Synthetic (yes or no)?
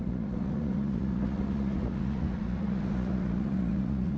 yes